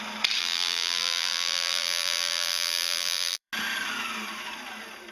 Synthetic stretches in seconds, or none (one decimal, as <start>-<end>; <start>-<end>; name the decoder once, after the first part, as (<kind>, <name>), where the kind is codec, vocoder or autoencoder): 0.4-3.5 (vocoder, BigVGAN v2)